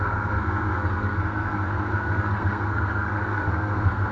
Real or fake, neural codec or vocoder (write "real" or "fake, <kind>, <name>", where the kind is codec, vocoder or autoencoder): fake, codec, SNAC